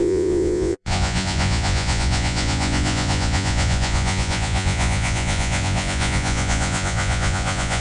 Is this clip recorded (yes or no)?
no